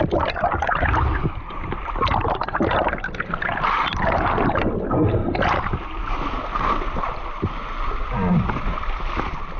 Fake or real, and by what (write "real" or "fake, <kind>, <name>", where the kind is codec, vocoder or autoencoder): real